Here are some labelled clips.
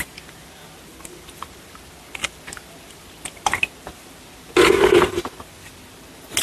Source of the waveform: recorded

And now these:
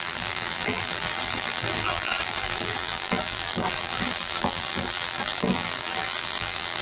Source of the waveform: remade